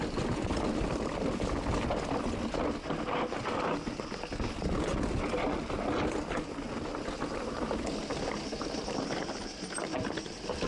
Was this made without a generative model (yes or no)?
yes